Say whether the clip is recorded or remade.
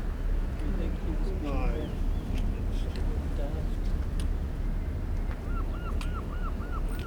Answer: recorded